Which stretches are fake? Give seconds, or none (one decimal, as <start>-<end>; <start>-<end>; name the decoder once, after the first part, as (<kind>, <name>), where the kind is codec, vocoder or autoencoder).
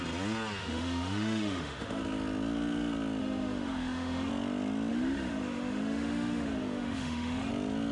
0.6-2.0 (autoencoder, DAC-VAE); 3.2-4.3; 4.9-7.5